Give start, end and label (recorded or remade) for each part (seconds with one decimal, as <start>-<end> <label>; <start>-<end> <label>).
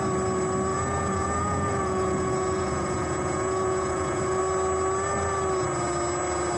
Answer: 0.0-0.7 recorded; 0.7-4.4 remade; 4.4-6.6 recorded